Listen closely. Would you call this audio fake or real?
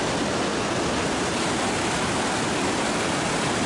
real